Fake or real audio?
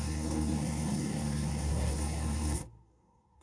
fake